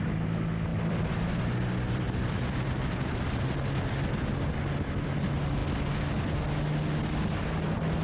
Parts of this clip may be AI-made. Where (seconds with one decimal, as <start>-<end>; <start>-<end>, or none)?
0.7-3.4